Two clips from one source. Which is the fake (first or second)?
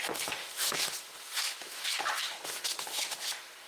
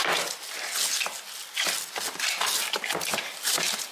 first